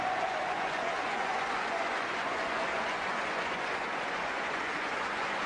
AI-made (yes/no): yes